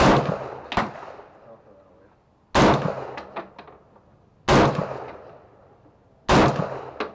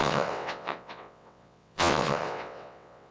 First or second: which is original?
first